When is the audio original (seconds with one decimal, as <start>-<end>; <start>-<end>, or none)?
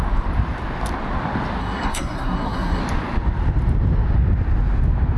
0.0-1.6; 2.8-5.2